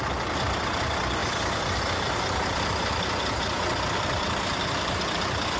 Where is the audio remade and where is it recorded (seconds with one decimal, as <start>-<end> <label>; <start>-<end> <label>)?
0.0-5.6 remade